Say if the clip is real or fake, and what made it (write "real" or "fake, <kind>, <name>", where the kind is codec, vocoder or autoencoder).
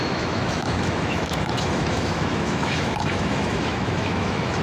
fake, autoencoder, DAC-VAE